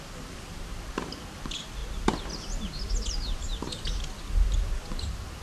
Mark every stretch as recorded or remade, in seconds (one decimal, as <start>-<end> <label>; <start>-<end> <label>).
0.0-5.4 recorded